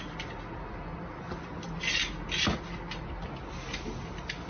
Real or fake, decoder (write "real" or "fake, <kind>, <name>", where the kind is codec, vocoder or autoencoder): real